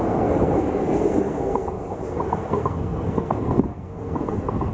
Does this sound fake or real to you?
fake